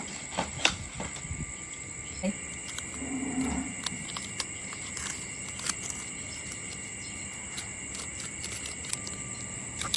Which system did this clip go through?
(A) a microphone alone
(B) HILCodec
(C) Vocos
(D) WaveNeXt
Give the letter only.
A